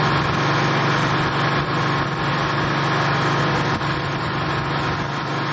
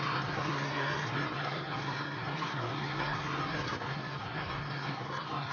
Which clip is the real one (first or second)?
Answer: first